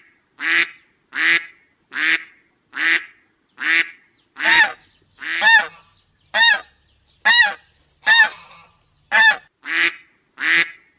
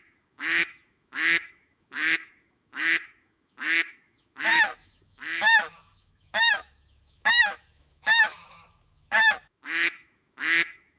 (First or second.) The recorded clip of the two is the first